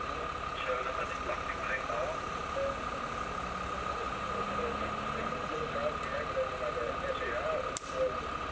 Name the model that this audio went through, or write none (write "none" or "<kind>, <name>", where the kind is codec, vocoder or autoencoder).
none